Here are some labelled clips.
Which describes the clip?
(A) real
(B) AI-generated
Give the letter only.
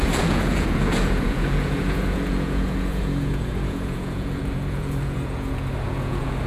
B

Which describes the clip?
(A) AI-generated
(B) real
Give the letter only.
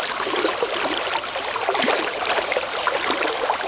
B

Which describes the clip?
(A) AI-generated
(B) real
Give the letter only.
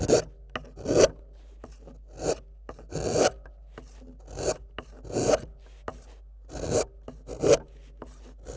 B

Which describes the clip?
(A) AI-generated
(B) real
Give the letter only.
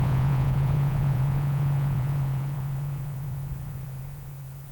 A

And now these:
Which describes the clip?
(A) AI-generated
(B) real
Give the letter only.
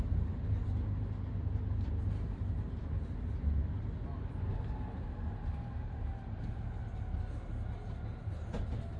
B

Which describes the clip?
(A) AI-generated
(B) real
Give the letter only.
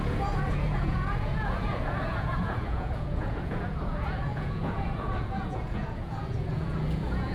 A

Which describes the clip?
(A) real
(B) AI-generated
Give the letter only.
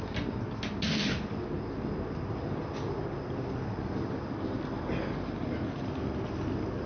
A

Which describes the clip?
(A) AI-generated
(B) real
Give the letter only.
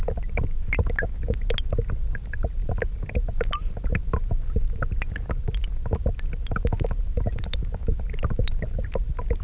B